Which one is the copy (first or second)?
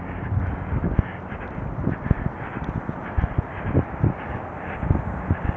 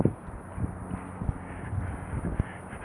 first